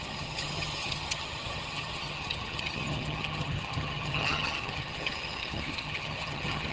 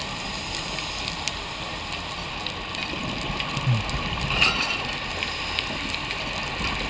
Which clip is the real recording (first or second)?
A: second